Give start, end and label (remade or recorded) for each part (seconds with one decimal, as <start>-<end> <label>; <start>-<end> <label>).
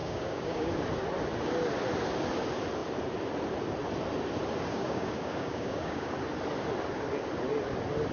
0.0-0.7 remade; 0.7-4.7 recorded; 4.7-6.1 remade; 6.1-8.1 recorded